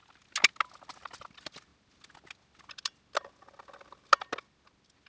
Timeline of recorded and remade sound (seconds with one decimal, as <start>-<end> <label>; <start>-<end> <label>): 0.0-5.1 recorded